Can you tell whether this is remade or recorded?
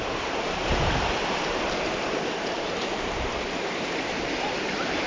remade